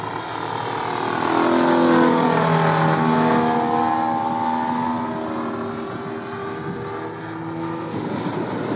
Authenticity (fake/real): real